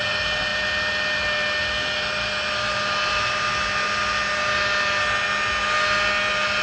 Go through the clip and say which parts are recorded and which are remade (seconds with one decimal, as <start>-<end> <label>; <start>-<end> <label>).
0.0-6.6 recorded